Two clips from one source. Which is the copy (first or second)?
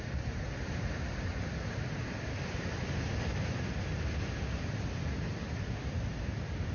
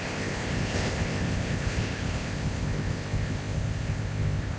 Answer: second